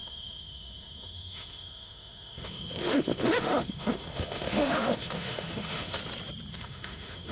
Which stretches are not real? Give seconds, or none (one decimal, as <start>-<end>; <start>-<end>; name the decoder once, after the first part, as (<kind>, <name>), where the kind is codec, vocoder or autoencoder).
0.0-6.0 (autoencoder, DAC-VAE); 6.5-7.3